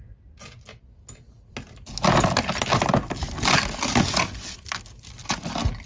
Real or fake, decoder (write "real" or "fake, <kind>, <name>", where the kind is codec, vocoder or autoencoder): real